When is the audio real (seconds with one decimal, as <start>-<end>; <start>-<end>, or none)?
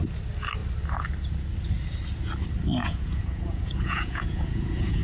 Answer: 0.0-2.8